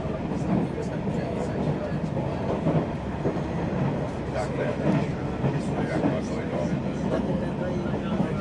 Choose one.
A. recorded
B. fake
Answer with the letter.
A